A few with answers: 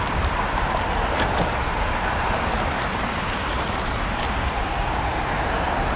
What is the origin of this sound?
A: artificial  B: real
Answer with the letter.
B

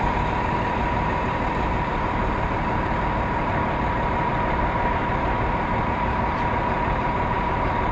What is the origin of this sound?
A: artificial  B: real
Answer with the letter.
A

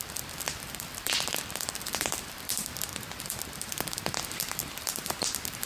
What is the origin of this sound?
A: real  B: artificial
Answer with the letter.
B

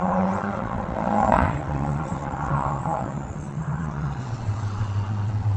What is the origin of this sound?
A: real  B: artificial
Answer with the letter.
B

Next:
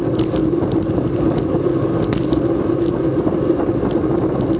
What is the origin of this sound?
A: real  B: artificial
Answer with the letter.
A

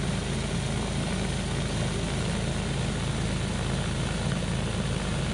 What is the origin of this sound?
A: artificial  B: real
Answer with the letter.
B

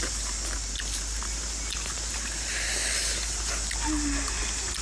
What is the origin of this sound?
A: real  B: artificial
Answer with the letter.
A